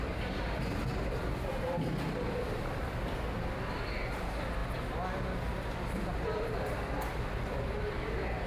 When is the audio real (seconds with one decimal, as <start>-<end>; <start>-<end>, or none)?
0.0-8.5